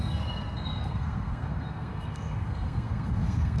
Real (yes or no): no